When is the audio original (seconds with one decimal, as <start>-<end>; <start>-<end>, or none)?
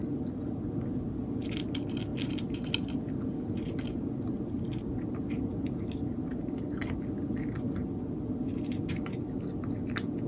0.0-10.3